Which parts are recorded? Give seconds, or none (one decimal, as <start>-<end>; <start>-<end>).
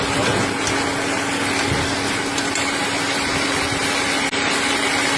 0.0-5.2